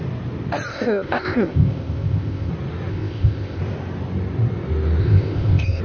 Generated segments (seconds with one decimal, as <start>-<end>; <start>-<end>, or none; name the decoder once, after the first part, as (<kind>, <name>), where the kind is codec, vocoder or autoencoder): 0.7-2.5 (codec, ZipCodec); 2.9-3.6; 5.0-5.8